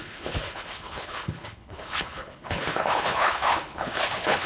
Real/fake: fake